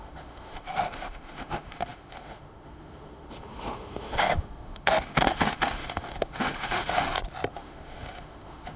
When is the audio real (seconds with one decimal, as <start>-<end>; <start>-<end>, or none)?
7.0-7.5